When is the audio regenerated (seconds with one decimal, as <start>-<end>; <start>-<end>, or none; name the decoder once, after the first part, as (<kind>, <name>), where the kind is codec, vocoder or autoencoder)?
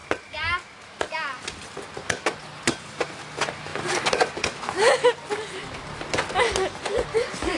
none